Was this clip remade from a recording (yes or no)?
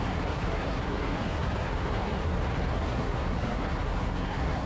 yes